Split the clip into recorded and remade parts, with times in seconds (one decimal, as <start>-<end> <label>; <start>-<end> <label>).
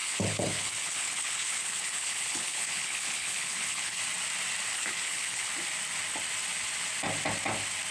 0.0-4.0 remade; 4.0-4.7 recorded; 4.7-5.5 remade; 5.5-7.9 recorded